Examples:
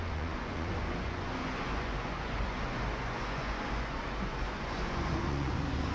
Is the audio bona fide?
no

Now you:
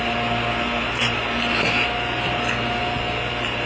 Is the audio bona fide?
yes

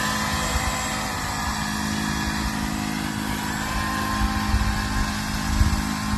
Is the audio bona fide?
yes